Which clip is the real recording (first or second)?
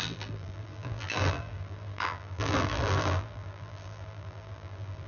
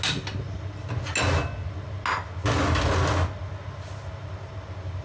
second